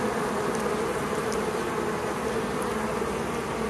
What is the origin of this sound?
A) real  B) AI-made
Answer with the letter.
A